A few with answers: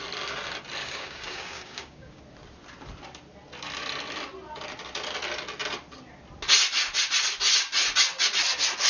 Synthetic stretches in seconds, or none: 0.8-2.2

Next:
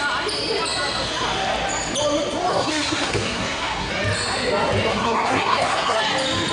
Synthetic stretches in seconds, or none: 2.5-3.9; 4.9-6.0

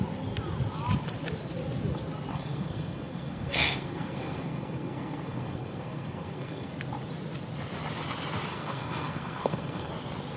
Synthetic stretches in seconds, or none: 2.3-6.7; 8.5-9.9

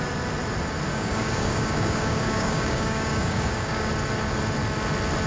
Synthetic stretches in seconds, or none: 0.9-3.9

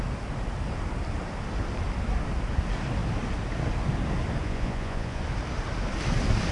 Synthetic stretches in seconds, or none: 4.4-5.2

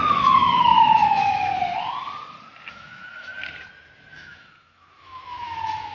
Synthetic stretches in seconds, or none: 0.0-1.5; 2.7-3.3; 4.1-5.9

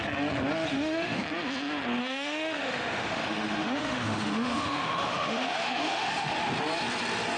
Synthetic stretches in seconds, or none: 0.7-1.2; 2.0-6.4

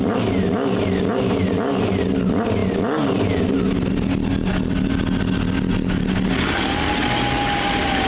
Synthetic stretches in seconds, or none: none